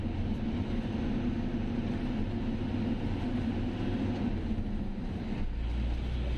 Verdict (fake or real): real